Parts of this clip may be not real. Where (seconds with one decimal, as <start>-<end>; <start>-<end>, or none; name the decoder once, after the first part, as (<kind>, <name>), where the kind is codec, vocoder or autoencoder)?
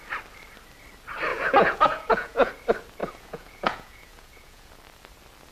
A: 1.3-2.5 (vocoder, Vocos); 3.0-4.7